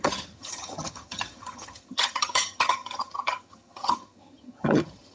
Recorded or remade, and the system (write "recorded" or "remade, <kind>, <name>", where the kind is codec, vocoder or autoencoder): remade, vocoder, HiFi-GAN